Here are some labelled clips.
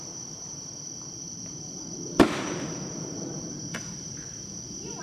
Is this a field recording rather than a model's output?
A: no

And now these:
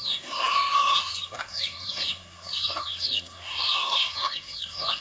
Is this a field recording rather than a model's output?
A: no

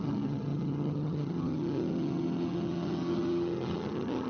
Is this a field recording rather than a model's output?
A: no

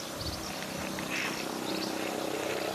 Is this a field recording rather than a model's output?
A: yes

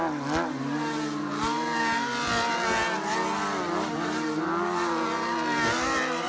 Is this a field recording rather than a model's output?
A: yes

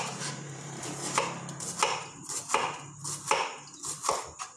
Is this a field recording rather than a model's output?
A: yes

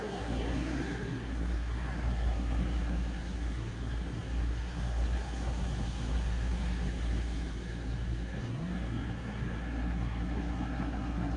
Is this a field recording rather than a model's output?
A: no